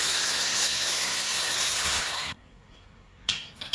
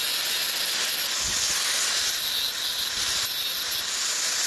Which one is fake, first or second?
first